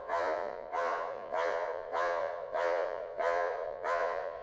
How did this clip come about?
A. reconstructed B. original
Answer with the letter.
A